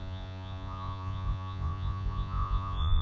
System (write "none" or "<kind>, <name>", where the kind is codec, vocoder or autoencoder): vocoder, Vocos